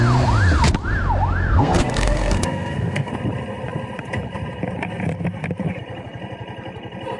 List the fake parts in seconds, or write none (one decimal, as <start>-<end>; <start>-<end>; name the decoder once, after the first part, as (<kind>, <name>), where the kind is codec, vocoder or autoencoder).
1.5-3.1 (codec, SNAC)